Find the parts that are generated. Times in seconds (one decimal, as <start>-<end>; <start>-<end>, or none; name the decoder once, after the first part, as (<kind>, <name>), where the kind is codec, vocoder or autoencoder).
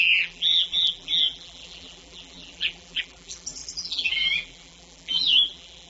0.0-5.9 (vocoder, BigVGAN v2)